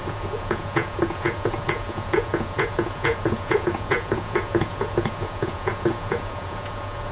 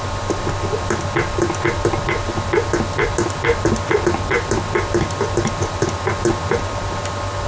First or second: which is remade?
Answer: first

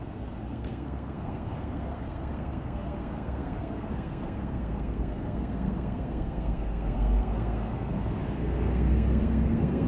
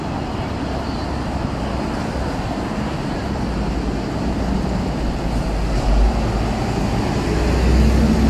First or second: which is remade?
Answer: first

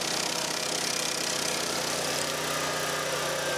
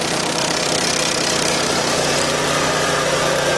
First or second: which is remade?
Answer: second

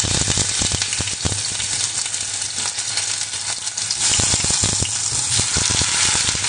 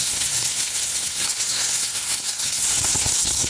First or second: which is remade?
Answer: second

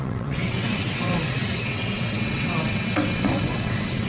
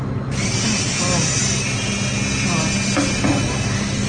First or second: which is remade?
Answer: first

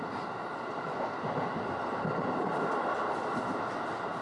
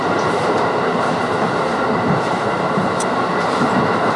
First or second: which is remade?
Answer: second